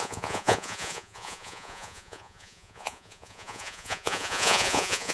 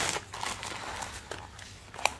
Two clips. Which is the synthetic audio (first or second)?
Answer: first